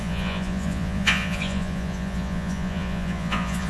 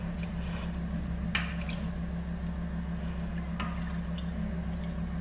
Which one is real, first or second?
second